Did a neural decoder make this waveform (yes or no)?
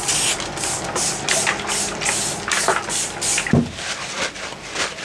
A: no